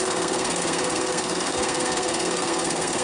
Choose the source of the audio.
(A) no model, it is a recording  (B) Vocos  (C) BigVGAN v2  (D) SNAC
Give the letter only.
D